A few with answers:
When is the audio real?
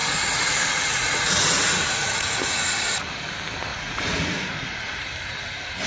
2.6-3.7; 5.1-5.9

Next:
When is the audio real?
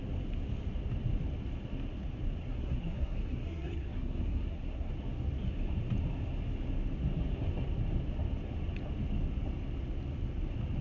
0.0-2.4; 4.9-10.8